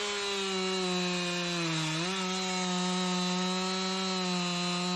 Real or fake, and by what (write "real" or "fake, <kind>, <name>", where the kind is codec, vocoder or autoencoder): real